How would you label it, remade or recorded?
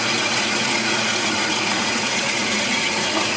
remade